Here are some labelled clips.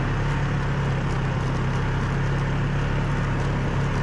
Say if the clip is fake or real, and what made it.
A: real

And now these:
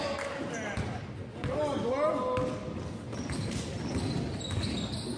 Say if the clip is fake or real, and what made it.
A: real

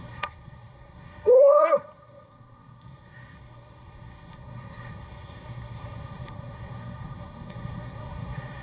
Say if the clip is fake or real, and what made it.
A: fake, codec, SNAC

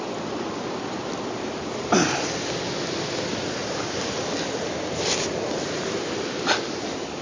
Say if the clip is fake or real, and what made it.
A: real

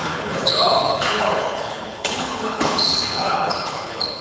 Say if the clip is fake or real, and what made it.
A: fake, codec, HILCodec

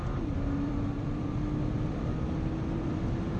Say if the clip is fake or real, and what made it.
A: fake, vocoder, BigVGAN v2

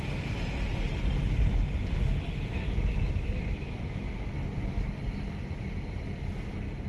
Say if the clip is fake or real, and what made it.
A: real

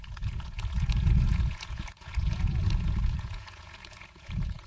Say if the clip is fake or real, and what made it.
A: fake, vocoder, Vocos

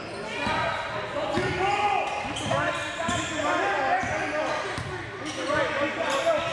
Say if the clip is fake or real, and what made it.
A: real